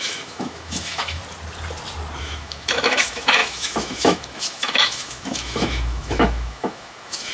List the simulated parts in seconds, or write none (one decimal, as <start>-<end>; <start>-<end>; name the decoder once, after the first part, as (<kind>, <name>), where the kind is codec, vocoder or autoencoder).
0.0-1.2 (autoencoder, DAC-VAE); 2.2-7.3